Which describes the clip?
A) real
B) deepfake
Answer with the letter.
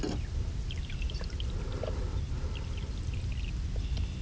A